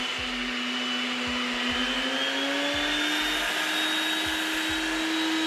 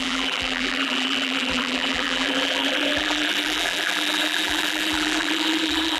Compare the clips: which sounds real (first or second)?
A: first